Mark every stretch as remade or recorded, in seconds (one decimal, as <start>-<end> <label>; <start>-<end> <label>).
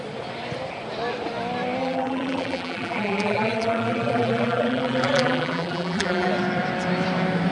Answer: 0.0-1.8 recorded; 1.8-6.3 remade; 6.3-7.5 recorded